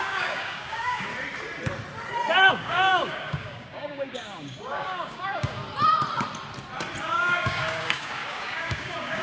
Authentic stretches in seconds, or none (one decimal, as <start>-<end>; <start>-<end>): 1.1-2.5; 5.6-7.0